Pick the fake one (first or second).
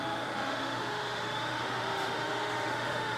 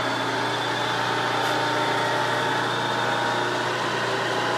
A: first